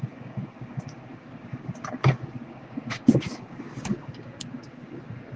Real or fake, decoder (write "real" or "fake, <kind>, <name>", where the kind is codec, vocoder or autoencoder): fake, codec, DAC